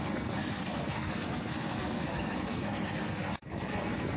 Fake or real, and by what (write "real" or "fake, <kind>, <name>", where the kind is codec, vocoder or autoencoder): fake, codec, SNAC